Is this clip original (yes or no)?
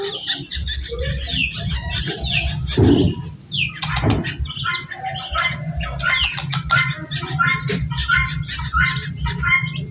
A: yes